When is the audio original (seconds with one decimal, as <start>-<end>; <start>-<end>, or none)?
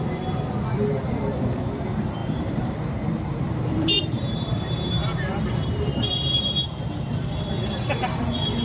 0.0-2.2; 7.4-8.6